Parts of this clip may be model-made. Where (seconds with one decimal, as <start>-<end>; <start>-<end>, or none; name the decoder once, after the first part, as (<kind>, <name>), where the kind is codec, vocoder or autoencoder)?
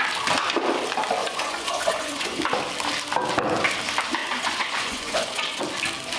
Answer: 1.2-2.4 (vocoder, Vocos); 4.2-5.6